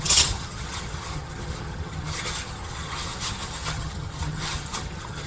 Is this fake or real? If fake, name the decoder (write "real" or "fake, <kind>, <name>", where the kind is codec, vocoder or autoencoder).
fake, vocoder, HiFi-GAN